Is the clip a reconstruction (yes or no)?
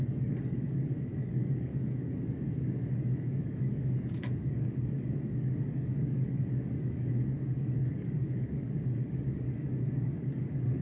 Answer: yes